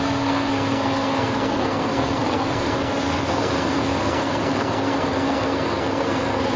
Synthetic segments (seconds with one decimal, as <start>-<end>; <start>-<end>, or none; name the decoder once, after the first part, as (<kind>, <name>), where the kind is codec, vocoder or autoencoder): 0.0-6.6 (codec, SNAC)